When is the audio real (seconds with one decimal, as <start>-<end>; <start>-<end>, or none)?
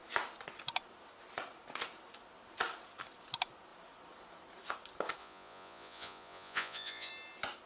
0.0-5.2; 7.1-7.7